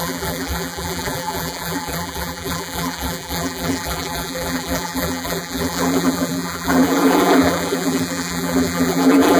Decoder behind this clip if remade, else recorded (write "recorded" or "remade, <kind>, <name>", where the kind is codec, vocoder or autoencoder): remade, vocoder, BigVGAN v2